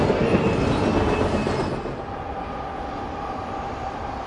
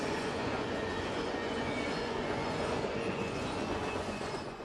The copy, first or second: second